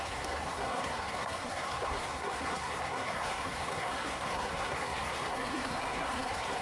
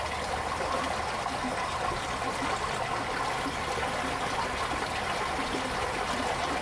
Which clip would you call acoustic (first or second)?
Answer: second